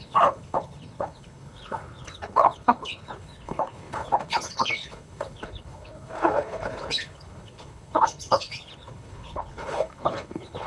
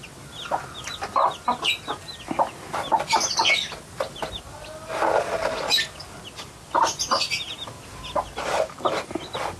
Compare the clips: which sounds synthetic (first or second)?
first